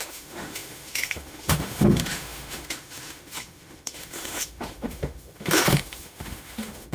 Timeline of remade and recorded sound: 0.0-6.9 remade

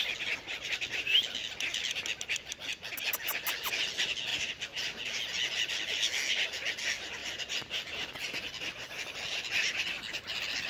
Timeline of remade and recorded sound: 0.0-10.7 recorded

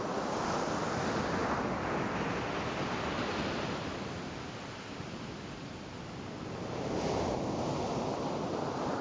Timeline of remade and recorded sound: 0.0-9.0 recorded